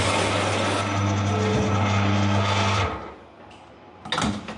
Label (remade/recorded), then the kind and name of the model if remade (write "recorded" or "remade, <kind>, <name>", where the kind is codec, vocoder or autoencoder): recorded